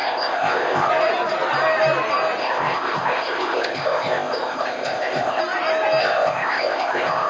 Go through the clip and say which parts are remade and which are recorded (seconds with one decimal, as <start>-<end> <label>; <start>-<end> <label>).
0.0-0.9 remade; 0.9-2.4 recorded; 2.4-5.4 remade; 5.4-6.0 recorded; 6.0-7.3 remade